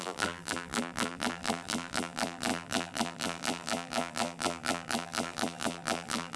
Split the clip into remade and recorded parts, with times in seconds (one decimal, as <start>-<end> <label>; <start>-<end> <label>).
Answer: 0.0-6.4 remade